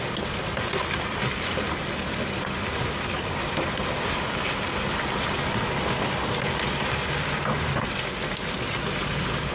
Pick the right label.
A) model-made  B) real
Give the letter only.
B